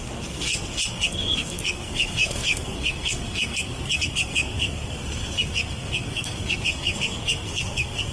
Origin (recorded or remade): remade